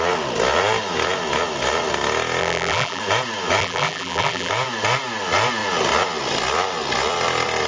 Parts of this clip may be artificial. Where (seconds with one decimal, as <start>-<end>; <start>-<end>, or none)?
2.4-3.0; 3.6-4.5